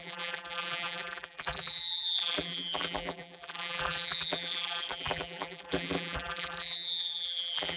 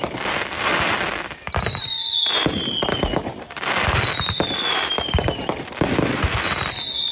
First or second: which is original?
second